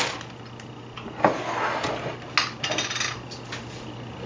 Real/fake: real